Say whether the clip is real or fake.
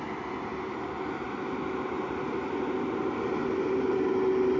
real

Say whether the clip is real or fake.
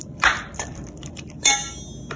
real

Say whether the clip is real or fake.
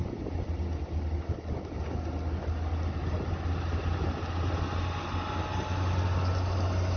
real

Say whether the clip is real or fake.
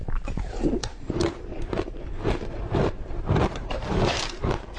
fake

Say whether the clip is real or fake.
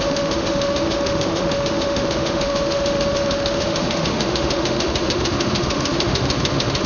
fake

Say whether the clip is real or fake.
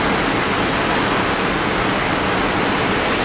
real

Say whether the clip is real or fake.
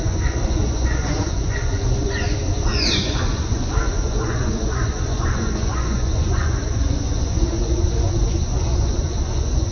fake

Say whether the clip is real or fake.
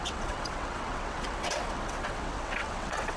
fake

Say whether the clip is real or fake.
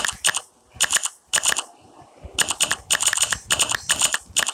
real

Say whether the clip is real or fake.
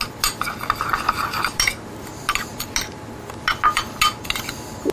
real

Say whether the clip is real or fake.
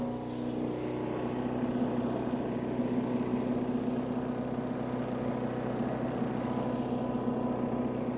real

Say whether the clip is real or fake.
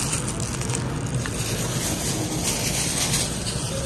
real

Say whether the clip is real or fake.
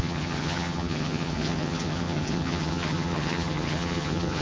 fake